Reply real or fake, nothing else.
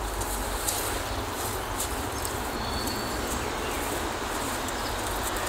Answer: real